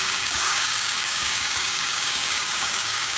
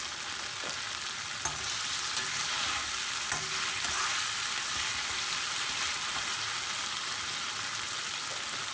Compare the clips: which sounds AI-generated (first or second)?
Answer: first